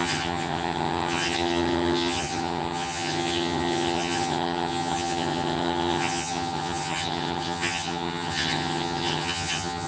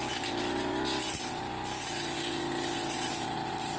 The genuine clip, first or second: second